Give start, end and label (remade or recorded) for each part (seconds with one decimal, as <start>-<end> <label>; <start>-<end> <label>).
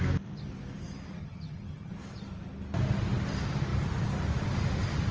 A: 0.0-1.2 recorded; 1.2-1.9 remade; 1.9-5.1 recorded